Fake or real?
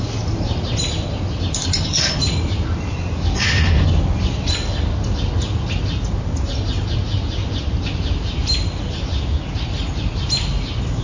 real